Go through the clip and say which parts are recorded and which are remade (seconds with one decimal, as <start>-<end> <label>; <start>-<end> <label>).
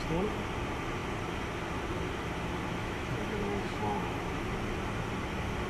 0.0-2.8 recorded; 2.8-4.5 remade; 4.5-5.7 recorded